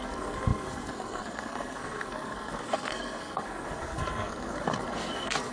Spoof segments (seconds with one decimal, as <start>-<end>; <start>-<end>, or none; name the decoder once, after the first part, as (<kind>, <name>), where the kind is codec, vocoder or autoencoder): 0.0-5.5 (codec, SNAC)